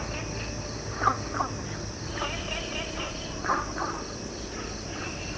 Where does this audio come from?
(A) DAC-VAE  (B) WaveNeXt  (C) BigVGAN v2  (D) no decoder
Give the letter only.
D